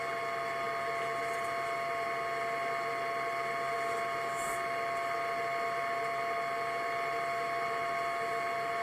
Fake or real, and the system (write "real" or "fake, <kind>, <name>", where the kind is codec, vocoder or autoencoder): real